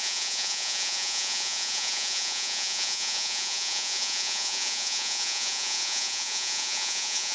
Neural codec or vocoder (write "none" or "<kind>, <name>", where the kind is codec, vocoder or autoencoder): vocoder, Vocos